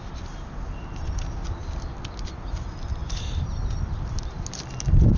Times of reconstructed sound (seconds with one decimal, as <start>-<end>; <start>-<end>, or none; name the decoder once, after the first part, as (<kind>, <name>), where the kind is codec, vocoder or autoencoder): none